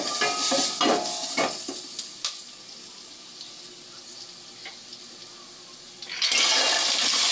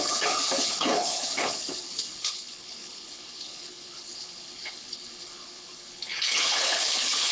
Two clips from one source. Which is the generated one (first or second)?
second